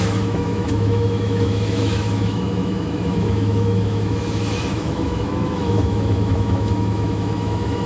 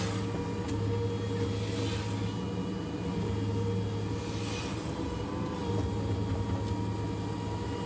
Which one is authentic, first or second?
second